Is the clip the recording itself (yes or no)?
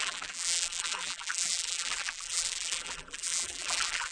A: no